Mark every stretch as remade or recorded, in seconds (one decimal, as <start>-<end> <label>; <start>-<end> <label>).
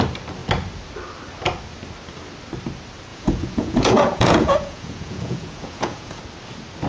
0.0-3.1 recorded; 3.1-6.2 remade; 6.2-6.9 recorded